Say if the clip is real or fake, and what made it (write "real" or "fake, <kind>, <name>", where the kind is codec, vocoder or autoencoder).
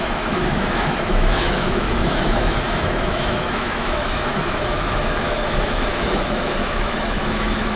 fake, autoencoder, DAC-VAE